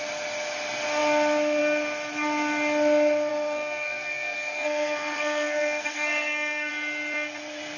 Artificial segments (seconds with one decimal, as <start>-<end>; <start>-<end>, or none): 3.3-6.7